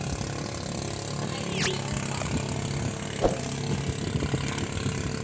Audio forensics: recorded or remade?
recorded